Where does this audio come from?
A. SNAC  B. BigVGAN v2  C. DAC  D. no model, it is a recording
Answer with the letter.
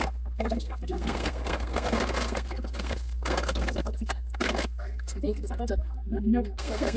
A